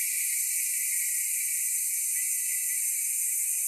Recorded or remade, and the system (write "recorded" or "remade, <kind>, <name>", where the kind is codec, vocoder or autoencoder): recorded